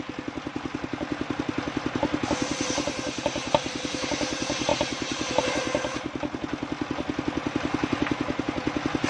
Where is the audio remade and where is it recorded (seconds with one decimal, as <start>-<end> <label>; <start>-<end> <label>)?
0.0-9.1 recorded